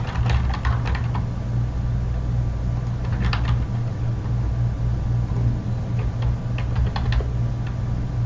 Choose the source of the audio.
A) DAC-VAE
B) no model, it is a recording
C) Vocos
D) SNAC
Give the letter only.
B